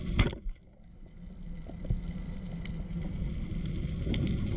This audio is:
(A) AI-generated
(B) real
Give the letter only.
B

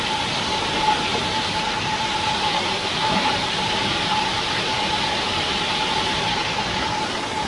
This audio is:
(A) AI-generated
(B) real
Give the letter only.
A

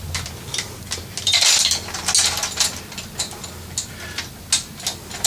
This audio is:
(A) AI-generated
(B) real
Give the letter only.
B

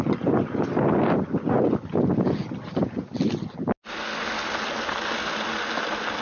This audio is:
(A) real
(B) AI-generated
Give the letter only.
A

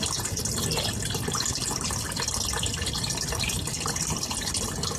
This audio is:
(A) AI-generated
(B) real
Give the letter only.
B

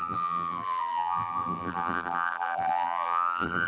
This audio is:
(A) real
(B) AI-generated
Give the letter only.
B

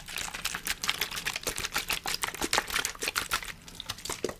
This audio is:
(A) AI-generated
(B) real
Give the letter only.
B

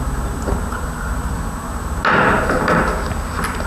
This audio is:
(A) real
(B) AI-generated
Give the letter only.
A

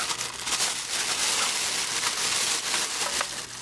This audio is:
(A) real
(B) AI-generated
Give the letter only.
A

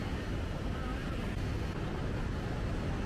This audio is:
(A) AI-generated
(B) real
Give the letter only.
A